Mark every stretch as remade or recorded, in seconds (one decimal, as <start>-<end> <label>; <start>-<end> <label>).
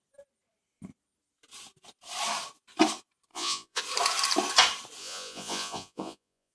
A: 0.0-3.3 recorded; 3.3-3.8 remade; 3.8-5.0 recorded; 5.0-6.5 remade